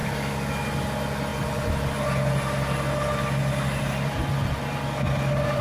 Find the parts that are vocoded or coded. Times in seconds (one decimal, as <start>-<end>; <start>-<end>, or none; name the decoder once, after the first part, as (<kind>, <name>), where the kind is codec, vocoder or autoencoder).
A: 0.0-0.5 (codec, DAC)